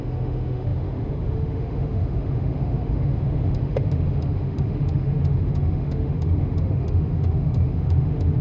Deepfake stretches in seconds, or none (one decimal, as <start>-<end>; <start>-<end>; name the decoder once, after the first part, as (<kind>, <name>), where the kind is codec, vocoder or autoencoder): 0.0-8.4 (autoencoder, DAC-VAE)

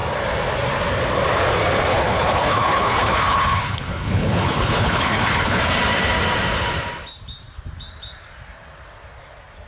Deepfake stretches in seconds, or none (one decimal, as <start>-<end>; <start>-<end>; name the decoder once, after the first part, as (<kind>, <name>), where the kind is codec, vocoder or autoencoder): 1.9-5.6 (codec, HILCodec)

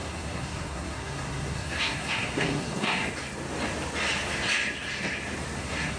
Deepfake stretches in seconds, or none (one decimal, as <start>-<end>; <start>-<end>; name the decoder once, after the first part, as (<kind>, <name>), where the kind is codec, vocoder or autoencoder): 0.0-3.0 (codec, SNAC); 5.6-6.0

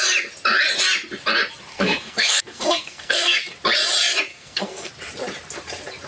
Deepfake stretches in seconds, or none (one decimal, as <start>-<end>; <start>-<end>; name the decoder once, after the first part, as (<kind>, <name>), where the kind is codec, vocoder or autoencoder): 1.7-3.5 (codec, SNAC); 4.3-4.9

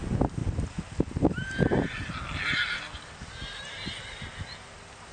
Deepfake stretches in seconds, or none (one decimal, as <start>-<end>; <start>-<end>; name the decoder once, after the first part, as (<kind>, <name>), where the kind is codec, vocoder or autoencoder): none